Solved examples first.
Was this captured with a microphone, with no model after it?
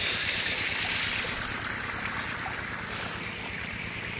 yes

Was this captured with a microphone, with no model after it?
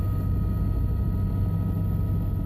yes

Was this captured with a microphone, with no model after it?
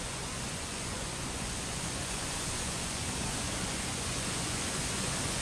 no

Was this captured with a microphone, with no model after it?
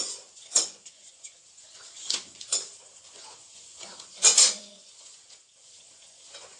no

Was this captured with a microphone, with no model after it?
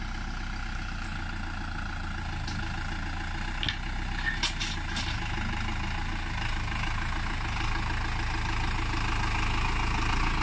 yes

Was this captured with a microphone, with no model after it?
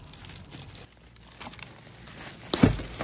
yes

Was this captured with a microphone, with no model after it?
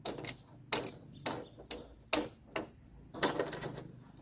yes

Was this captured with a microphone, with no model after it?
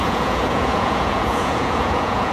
no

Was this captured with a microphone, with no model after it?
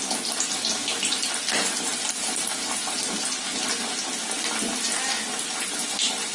yes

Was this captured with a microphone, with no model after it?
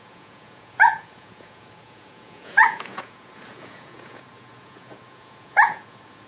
no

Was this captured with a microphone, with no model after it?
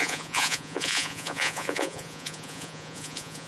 no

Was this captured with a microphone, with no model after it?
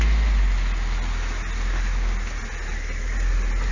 yes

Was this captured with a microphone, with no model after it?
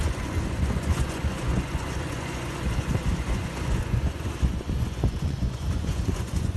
no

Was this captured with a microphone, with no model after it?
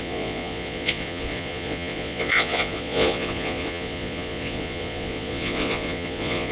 no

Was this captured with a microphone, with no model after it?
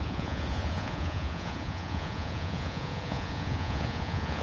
no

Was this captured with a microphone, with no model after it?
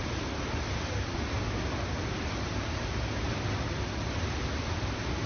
yes